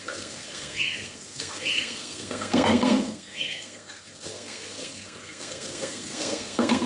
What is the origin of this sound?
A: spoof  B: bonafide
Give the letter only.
A